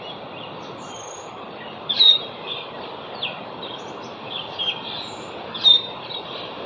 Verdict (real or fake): real